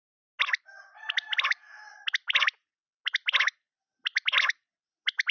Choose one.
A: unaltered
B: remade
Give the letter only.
A